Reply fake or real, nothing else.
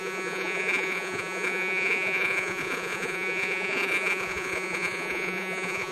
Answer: fake